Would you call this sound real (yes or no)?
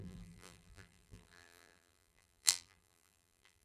no